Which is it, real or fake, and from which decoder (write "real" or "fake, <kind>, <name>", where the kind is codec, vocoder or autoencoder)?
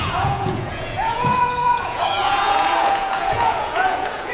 fake, vocoder, Vocos